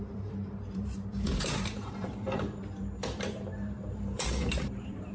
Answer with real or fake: fake